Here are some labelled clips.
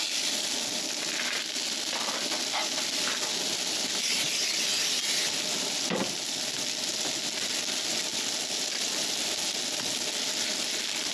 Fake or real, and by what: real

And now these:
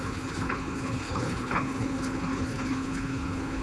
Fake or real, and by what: fake, codec, HILCodec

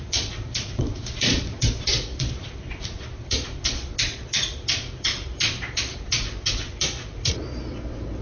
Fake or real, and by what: fake, vocoder, Vocos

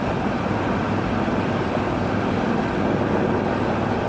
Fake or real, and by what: real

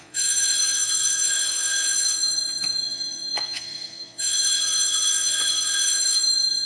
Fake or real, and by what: fake, vocoder, Vocos